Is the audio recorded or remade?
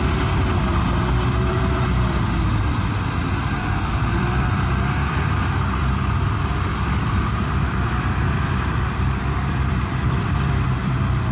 remade